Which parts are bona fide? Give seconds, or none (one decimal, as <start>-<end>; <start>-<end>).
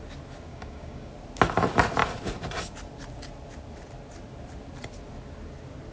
0.0-0.5; 1.1-5.9